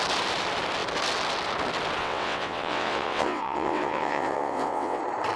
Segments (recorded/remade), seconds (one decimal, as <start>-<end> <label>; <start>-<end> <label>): 0.0-2.0 recorded; 2.0-5.0 remade; 5.0-5.4 recorded